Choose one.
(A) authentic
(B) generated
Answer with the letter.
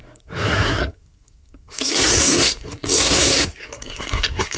B